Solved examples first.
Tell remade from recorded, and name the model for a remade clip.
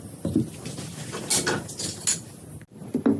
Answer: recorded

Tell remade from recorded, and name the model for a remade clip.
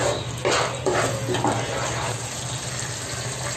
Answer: recorded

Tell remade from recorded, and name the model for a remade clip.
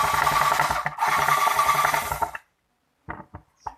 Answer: recorded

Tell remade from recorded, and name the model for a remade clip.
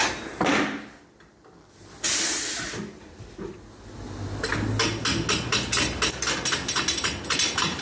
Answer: recorded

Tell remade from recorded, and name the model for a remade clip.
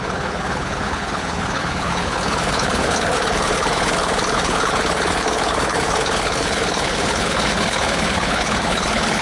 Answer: remade, codec, HILCodec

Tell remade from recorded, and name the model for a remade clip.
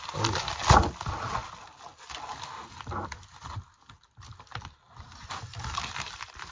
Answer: recorded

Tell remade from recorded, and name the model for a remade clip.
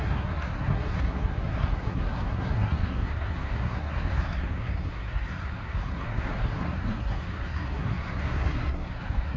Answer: remade, codec, SNAC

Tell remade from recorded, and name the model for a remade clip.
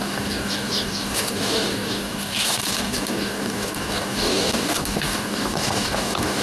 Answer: remade, codec, DAC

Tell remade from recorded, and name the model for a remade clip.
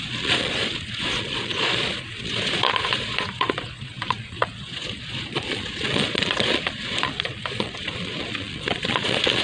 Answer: remade, vocoder, Vocos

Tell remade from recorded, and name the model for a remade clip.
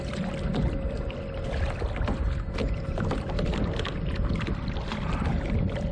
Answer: recorded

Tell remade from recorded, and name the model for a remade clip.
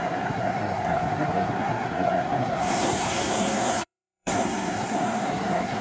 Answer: remade, codec, SNAC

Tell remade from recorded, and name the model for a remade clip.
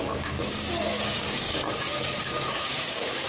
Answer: remade, codec, DAC